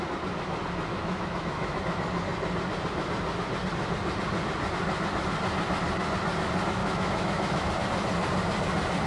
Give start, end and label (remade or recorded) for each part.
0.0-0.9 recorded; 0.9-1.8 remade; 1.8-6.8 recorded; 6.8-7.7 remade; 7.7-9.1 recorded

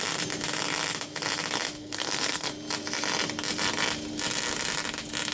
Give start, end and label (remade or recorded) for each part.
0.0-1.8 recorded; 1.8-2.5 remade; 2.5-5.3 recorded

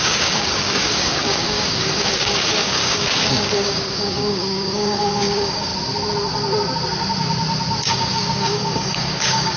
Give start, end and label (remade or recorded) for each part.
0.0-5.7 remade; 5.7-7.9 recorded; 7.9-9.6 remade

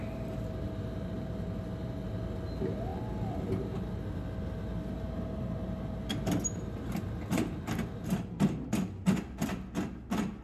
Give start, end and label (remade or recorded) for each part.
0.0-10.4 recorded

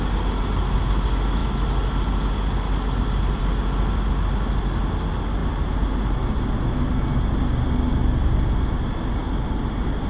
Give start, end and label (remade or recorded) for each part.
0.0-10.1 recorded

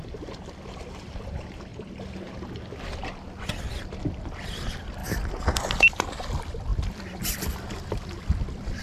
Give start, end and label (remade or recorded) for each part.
0.0-1.7 remade; 1.7-3.8 recorded; 3.8-5.0 remade; 5.0-5.8 recorded; 5.8-8.8 remade

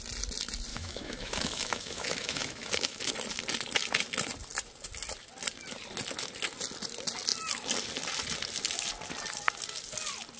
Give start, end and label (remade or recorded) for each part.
0.0-0.7 recorded; 0.7-3.1 remade; 3.1-10.4 recorded

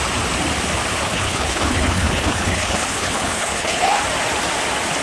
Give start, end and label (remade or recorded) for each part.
0.0-1.0 recorded; 1.0-4.0 remade; 4.0-5.0 recorded